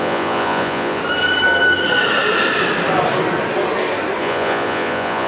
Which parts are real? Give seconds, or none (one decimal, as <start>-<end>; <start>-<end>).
1.0-4.2